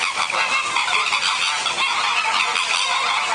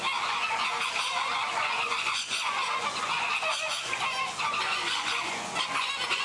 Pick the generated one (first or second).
second